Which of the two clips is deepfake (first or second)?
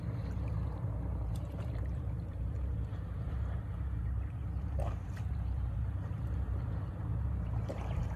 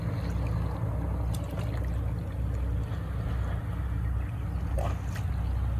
first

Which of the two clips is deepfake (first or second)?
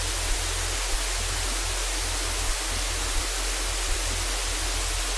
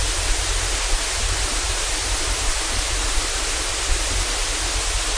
second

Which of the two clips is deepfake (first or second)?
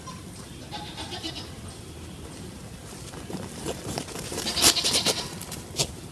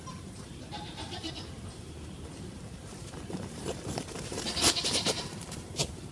second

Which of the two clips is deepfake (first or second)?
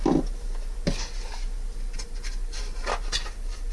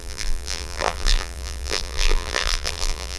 second